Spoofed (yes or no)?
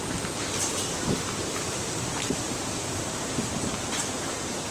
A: yes